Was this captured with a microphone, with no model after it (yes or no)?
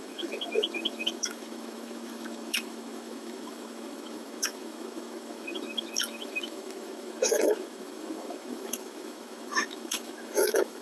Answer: no